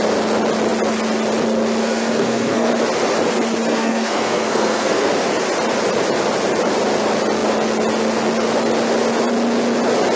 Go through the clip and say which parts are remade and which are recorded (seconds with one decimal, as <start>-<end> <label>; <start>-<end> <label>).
0.0-1.8 recorded; 1.8-2.7 remade; 2.7-3.7 recorded; 3.7-5.1 remade; 5.1-10.2 recorded